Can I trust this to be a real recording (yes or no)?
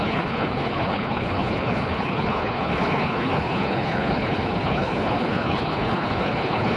no